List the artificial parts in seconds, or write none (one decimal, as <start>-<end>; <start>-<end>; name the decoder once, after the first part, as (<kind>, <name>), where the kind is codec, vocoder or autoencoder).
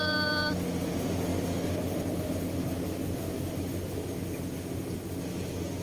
none